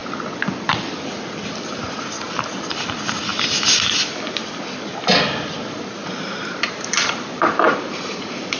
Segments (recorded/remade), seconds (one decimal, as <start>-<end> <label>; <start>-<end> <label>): 0.0-6.0 recorded; 6.0-8.6 remade